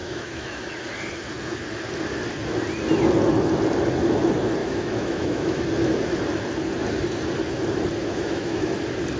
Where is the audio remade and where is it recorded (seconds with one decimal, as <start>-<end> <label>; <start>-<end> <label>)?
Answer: 0.0-0.6 remade; 0.6-4.6 recorded; 4.6-5.6 remade; 5.6-8.0 recorded; 8.0-8.7 remade; 8.7-9.2 recorded